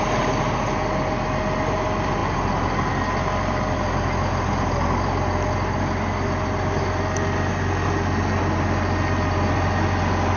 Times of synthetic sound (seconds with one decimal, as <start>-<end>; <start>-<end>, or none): none